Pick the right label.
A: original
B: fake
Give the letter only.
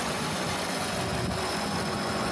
B